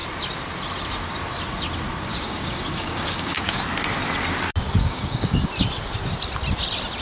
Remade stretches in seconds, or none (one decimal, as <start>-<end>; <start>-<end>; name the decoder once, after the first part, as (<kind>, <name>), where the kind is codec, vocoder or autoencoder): 2.1-3.6 (codec, DAC); 4.8-5.5